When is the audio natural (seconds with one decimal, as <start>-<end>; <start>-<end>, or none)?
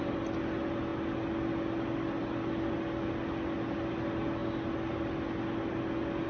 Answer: 0.0-6.3